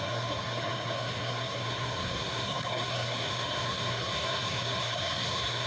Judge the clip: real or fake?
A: fake